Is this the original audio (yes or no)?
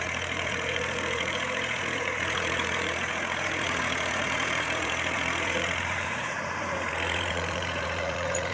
no